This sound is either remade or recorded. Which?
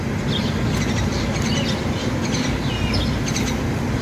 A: recorded